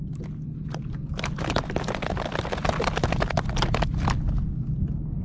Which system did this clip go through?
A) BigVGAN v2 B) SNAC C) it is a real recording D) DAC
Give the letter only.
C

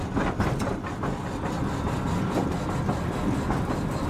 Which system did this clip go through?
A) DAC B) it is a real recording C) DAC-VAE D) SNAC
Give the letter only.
B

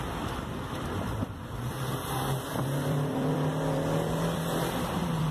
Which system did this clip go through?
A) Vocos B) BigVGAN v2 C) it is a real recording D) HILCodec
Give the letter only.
B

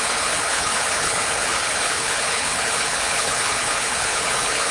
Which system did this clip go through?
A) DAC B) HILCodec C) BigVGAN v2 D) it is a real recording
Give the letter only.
B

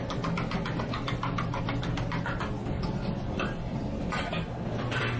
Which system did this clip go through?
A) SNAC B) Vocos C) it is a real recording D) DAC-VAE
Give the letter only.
C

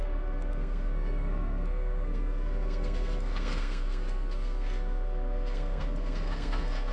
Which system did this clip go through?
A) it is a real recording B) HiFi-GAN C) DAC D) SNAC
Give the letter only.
D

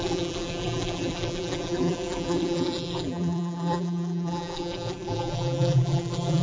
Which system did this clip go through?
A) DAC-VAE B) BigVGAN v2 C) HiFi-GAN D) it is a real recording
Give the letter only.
B